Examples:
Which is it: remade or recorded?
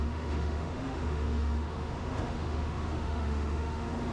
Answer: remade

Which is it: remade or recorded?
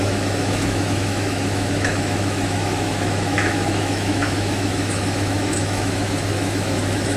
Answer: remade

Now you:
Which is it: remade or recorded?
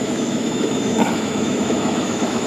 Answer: remade